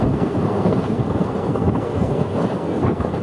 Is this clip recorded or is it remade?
remade